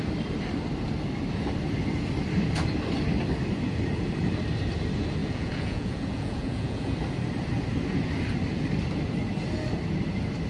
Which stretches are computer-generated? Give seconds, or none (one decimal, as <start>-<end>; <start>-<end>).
5.2-6.9

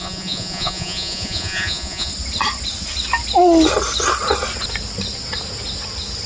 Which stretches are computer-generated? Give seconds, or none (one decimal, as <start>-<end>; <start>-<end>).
0.0-2.1

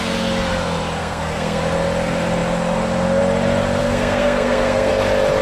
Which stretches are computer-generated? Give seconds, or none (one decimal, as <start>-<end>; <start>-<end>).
1.0-1.6; 3.8-4.9